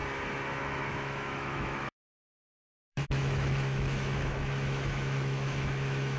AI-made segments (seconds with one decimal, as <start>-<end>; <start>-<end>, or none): 0.6-6.2